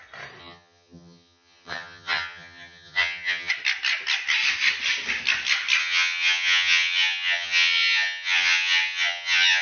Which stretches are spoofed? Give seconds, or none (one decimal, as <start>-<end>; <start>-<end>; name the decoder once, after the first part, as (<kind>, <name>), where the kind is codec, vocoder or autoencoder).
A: 0.4-3.5 (vocoder, HiFi-GAN); 5.8-9.6